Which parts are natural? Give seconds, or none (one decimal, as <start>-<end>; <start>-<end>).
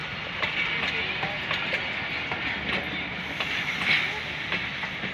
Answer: 0.0-5.1